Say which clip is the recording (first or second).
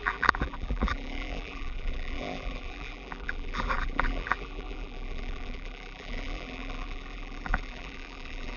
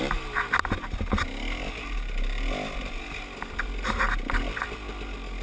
second